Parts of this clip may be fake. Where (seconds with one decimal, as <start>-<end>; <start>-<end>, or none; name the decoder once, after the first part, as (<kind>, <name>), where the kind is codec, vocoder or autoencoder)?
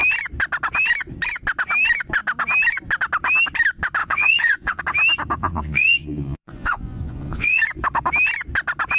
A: 4.0-4.8 (vocoder, Vocos); 5.4-7.6